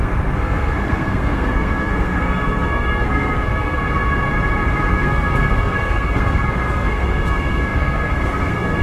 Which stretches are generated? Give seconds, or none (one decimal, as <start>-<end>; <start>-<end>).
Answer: 0.0-3.8; 4.9-8.8